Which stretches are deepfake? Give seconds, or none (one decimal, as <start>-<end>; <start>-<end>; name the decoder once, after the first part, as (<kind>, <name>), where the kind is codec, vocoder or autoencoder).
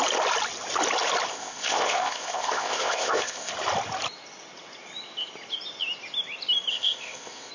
1.3-3.5 (codec, ZipCodec); 6.7-7.5